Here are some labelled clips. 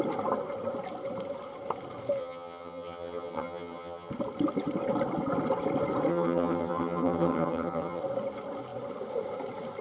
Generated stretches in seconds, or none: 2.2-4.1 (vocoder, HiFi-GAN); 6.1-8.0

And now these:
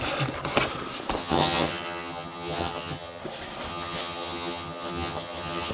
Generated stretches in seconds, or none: 1.2-3.2 (vocoder, HiFi-GAN); 3.7-5.7